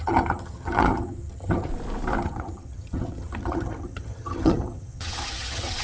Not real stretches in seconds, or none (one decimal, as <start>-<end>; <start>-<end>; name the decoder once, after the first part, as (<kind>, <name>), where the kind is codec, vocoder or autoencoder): 0.0-1.7 (vocoder, HiFi-GAN); 2.2-5.8

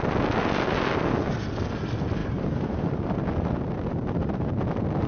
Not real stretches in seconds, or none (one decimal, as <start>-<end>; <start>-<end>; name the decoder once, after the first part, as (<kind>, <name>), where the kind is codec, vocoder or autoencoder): 2.2-4.6 (vocoder, BigVGAN v2)